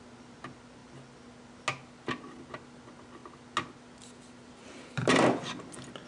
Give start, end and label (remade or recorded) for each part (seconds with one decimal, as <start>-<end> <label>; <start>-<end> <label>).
0.0-6.1 recorded